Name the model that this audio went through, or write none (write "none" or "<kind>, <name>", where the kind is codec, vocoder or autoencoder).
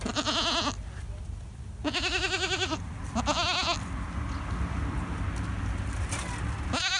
none